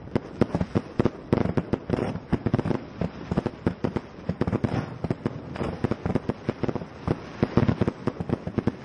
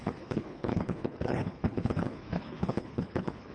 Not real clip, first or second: second